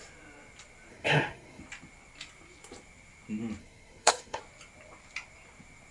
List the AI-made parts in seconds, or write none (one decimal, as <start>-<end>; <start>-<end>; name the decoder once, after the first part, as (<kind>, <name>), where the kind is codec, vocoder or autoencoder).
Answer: 0.9-1.6 (codec, SNAC); 3.6-4.4